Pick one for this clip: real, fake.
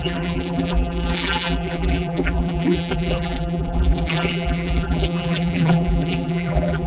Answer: fake